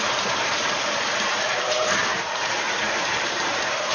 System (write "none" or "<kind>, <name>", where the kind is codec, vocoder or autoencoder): vocoder, BigVGAN v2